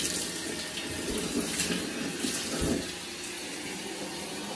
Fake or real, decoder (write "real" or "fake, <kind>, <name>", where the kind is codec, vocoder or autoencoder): real